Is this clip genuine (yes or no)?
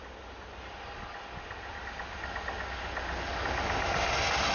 yes